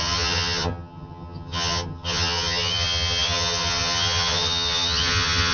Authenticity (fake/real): fake